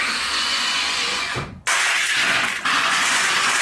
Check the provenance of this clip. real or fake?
fake